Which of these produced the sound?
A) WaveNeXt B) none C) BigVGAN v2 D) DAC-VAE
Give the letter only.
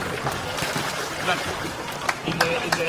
C